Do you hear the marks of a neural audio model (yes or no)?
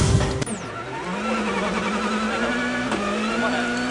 no